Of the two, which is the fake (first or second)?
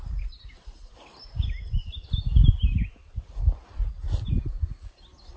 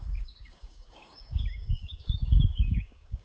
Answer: second